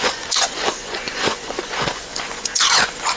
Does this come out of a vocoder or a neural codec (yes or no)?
yes